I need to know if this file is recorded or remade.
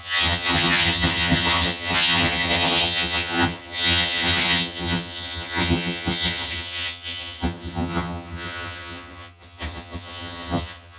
remade